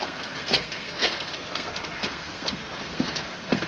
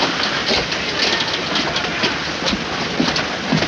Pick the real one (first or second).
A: second